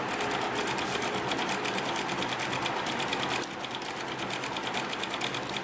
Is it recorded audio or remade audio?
recorded